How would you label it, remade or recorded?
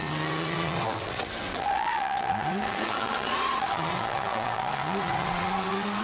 remade